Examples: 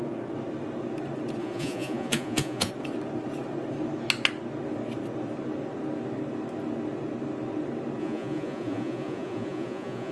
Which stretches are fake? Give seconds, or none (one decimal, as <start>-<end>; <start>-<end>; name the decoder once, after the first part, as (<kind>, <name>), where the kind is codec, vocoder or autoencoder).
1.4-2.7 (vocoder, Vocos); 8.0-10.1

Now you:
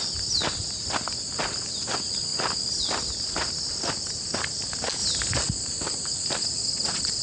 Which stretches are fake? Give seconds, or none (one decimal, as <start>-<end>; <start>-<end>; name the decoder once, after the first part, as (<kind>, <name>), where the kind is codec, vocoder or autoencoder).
6.6-7.2 (vocoder, Vocos)

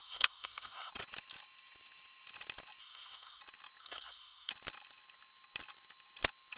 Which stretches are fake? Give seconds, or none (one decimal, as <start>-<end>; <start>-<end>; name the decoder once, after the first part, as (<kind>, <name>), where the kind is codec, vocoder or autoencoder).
0.0-0.9 (codec, SNAC); 2.8-3.4; 3.8-4.5

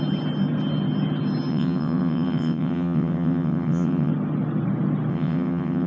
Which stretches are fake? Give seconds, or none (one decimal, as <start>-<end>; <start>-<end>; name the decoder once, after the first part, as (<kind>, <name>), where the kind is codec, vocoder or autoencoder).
1.5-4.1 (vocoder, WaveNeXt); 5.1-5.9